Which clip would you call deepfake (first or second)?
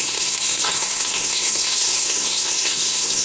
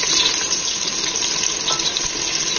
first